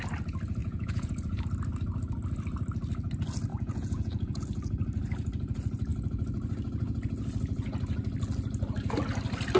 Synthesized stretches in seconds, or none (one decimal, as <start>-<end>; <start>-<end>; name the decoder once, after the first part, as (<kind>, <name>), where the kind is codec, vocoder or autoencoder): 0.6-1.4 (vocoder, Vocos); 3.5-4.4